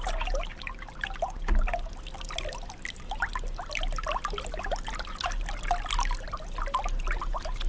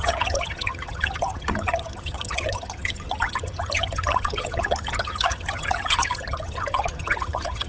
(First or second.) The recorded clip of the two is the first